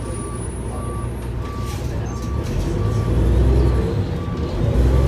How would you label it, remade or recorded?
recorded